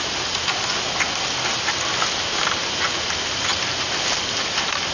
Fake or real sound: real